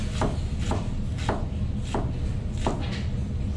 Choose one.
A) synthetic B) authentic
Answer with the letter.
B